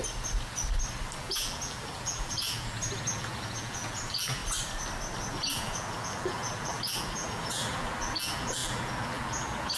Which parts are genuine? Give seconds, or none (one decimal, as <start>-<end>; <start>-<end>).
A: 0.0-1.2; 4.4-5.3